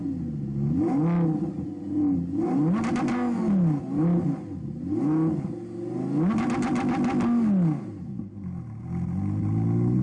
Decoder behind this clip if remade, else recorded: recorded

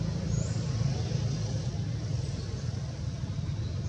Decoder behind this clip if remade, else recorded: recorded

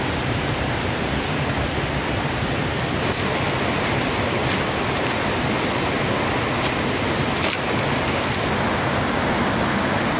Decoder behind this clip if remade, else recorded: recorded